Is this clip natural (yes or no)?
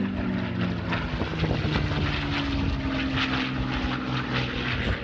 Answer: yes